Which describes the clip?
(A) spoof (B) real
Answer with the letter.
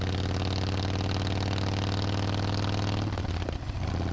B